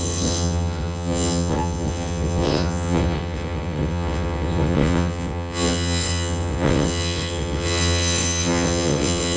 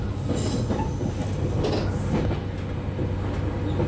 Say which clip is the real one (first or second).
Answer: second